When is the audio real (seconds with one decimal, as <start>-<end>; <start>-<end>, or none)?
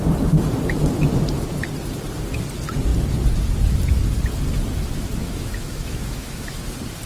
0.0-5.2; 6.6-7.1